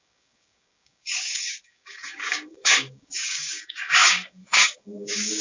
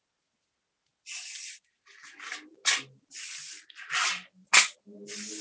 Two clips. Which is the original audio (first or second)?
second